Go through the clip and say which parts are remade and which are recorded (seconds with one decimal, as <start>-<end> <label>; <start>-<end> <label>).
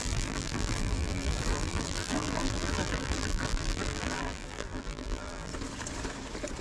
0.0-5.5 remade; 5.5-6.6 recorded